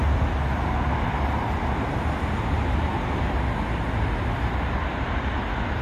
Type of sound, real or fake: real